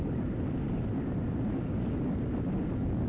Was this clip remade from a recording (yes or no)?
no